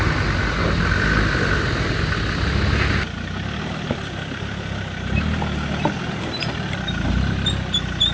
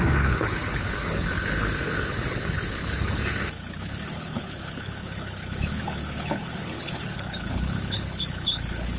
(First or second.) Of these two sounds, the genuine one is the first